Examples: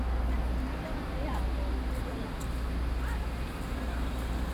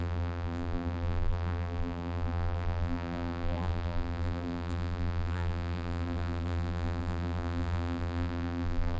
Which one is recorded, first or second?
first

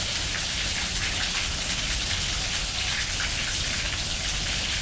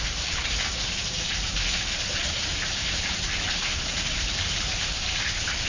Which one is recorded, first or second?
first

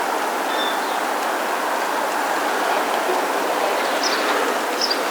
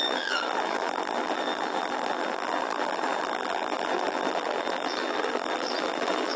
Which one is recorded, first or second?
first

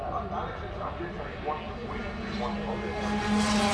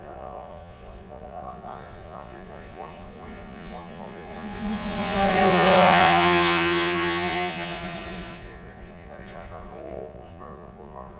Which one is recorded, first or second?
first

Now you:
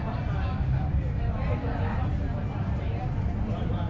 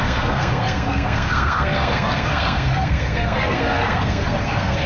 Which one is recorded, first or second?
first